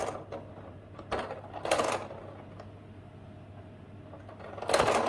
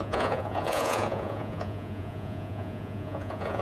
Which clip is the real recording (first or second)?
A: first